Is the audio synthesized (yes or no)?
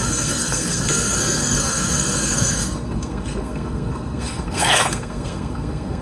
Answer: yes